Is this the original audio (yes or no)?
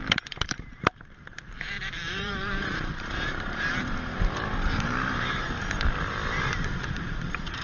no